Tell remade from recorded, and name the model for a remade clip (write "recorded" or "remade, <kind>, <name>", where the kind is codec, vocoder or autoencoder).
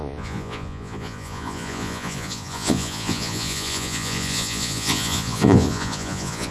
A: remade, vocoder, Vocos